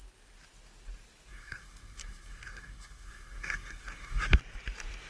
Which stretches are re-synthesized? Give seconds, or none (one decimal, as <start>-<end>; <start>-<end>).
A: 1.3-4.4